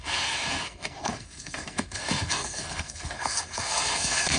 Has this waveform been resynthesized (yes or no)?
yes